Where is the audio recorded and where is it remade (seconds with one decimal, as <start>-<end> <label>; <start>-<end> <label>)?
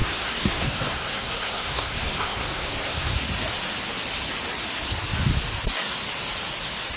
0.0-3.1 remade; 3.1-7.0 recorded